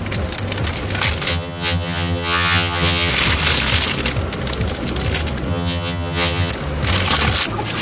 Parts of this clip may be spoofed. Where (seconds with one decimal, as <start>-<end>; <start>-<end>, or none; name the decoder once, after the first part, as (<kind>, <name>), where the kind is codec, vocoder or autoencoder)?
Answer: 1.3-3.1 (vocoder, HiFi-GAN); 5.5-6.5